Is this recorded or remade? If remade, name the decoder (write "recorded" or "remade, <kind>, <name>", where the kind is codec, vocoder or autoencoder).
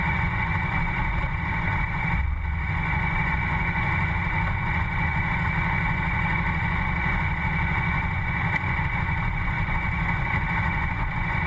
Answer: remade, vocoder, Vocos